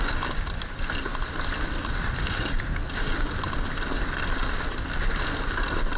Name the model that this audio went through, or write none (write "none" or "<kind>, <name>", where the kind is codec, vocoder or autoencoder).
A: none